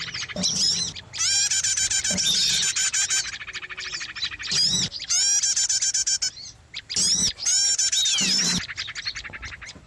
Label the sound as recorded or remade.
recorded